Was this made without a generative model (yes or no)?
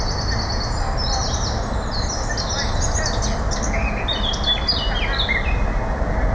yes